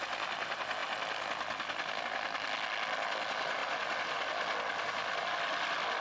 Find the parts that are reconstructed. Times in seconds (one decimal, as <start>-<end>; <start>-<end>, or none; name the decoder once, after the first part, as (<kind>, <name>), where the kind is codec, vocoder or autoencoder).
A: none

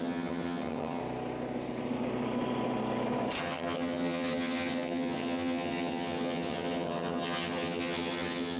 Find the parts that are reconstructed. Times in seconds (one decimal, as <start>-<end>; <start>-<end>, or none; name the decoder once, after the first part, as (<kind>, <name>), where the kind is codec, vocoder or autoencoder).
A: 0.0-1.0 (vocoder, HiFi-GAN); 3.4-8.6

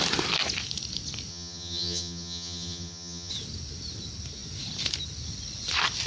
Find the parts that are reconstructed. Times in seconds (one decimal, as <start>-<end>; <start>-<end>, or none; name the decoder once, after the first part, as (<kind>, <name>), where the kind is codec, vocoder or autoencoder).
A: 1.3-3.3 (vocoder, HiFi-GAN)

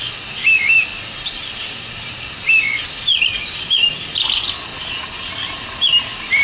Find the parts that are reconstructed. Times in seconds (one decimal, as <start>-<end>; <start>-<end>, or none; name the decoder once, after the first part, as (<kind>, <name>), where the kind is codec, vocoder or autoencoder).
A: none

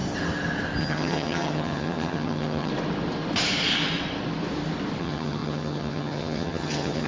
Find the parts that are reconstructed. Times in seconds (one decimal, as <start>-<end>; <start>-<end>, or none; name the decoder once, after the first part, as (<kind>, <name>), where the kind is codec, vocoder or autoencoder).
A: 0.8-2.7 (vocoder, HiFi-GAN); 5.0-7.1

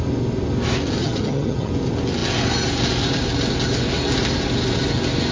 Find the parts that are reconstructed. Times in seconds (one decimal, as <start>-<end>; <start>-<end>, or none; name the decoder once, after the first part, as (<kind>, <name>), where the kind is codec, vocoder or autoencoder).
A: 1.0-1.7 (vocoder, HiFi-GAN)

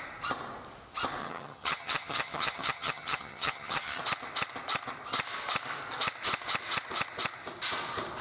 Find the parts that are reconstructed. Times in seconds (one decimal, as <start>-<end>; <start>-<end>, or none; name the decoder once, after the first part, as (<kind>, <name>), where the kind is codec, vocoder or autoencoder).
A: 1.2-4.0 (vocoder, HiFi-GAN)